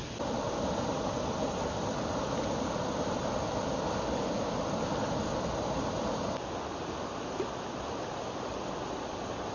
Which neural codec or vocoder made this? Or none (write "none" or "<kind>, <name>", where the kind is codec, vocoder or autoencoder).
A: none